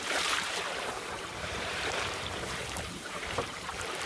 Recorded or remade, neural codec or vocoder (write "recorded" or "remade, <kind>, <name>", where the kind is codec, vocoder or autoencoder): remade, vocoder, BigVGAN v2